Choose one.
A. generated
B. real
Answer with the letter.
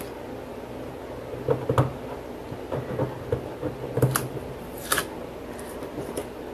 B